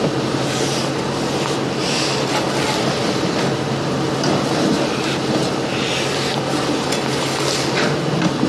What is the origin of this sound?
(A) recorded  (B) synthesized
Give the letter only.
A